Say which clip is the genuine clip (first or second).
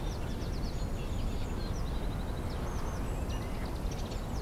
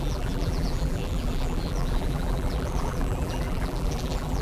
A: first